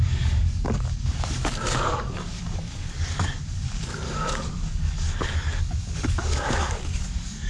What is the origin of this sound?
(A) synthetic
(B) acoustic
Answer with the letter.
A